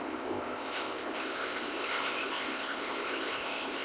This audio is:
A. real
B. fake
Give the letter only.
B